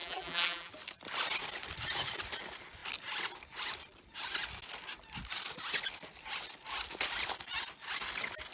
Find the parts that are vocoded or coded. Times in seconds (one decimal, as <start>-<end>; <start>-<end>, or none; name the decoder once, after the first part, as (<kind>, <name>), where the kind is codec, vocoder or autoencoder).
0.0-0.7 (vocoder, BigVGAN v2)